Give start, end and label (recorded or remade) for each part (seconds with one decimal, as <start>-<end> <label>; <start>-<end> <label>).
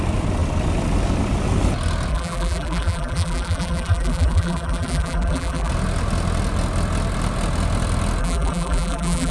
0.0-2.1 recorded; 2.1-5.7 remade; 5.7-8.2 recorded; 8.2-9.3 remade